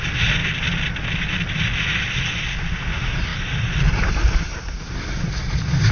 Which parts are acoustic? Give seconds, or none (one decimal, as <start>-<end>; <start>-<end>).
0.0-5.9